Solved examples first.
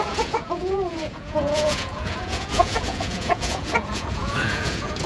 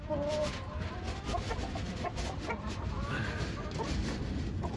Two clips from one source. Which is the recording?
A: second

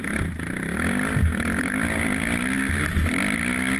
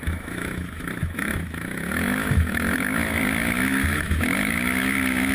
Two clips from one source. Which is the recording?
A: first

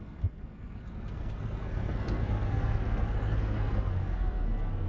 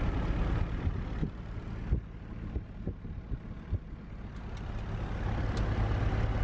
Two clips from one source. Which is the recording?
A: second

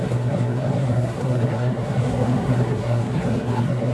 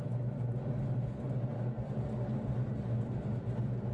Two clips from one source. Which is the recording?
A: second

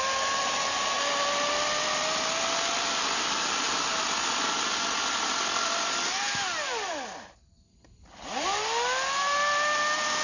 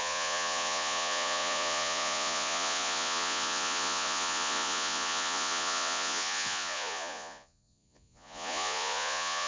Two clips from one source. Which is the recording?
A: first